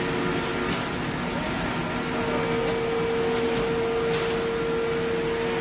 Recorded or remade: recorded